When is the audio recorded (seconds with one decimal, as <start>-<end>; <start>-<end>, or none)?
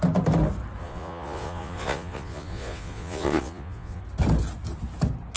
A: 0.0-0.8; 4.0-5.4